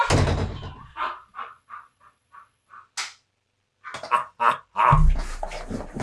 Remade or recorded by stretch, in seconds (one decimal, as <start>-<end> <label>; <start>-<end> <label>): 0.0-0.8 recorded; 0.8-2.7 remade; 2.7-6.0 recorded

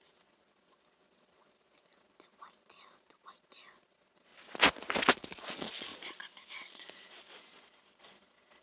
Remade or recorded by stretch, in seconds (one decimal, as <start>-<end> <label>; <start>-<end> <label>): 0.0-4.3 remade; 4.3-5.1 recorded; 5.1-5.9 remade; 5.9-6.5 recorded; 6.5-8.6 remade

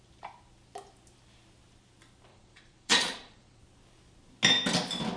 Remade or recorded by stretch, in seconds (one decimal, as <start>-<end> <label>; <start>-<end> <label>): 0.0-2.3 recorded; 2.3-3.6 remade; 3.6-5.2 recorded

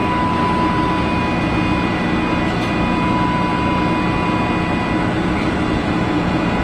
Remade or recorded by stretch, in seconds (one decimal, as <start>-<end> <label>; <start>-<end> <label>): 0.0-5.8 recorded; 5.8-6.6 remade